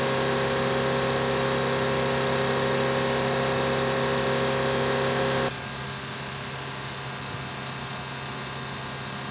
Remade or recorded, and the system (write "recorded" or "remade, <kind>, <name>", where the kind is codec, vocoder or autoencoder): recorded